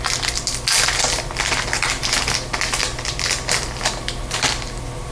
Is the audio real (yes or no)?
yes